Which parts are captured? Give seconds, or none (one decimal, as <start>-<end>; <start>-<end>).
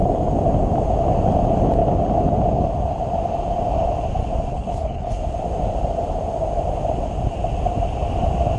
0.0-4.5; 5.2-8.6